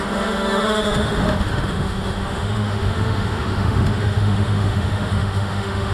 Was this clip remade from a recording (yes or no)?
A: yes